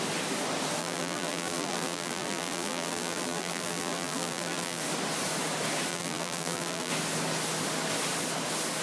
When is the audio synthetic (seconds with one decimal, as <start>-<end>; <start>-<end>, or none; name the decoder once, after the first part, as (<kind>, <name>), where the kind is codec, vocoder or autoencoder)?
0.8-4.8 (vocoder, BigVGAN v2); 5.9-6.9